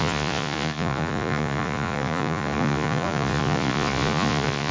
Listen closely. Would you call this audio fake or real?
fake